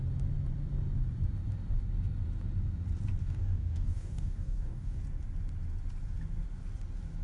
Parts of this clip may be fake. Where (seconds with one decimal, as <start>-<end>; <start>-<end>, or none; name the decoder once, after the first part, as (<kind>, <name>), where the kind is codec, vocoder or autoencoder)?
3.2-5.0 (codec, DAC)